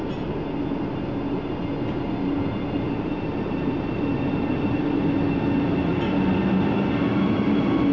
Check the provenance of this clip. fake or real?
real